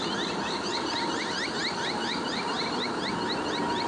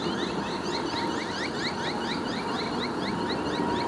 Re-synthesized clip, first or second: first